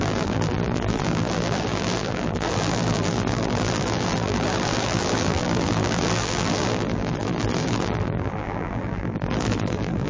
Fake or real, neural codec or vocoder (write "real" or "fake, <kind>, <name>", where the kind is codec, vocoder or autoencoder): fake, vocoder, BigVGAN v2